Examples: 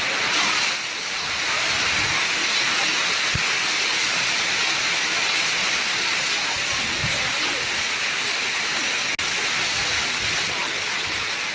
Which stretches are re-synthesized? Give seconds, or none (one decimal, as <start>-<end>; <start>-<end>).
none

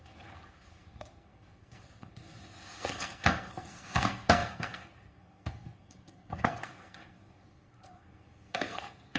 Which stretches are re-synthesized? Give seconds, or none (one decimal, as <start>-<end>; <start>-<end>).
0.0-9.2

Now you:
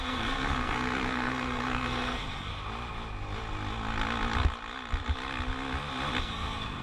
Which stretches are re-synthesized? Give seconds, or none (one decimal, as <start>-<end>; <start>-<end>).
0.0-2.5; 6.2-6.8

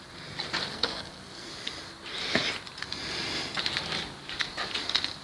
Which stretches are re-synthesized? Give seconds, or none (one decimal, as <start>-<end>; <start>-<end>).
0.7-1.5